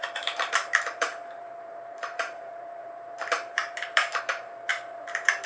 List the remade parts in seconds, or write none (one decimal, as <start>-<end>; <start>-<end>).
0.0-5.5